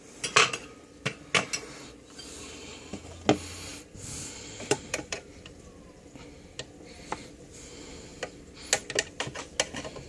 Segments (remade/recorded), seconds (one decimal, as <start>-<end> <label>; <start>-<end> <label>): 0.0-3.7 recorded; 3.7-6.1 remade; 6.1-10.1 recorded